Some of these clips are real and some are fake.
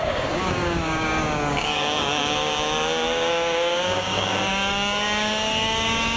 fake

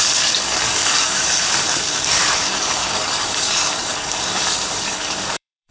fake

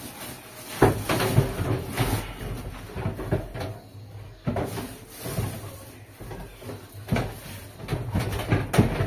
real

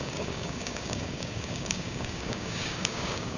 fake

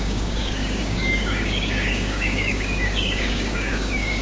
fake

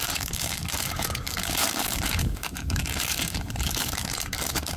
fake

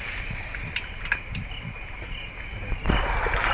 real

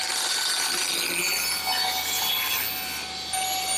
real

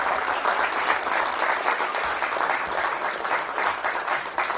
real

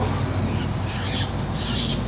real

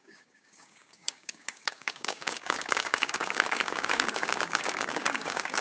fake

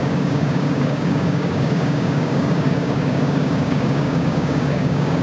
fake